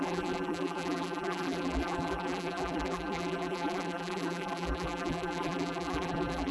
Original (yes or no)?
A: no